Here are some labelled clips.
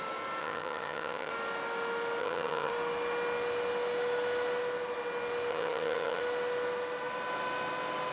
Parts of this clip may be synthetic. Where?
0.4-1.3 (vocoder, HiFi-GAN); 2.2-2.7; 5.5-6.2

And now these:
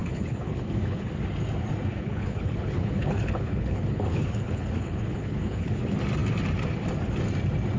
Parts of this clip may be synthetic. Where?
0.0-1.1 (codec, HILCodec); 1.9-5.8

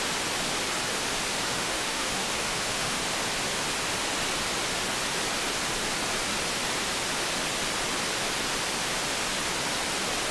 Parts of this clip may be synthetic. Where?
1.3-3.0 (autoencoder, DAC-VAE)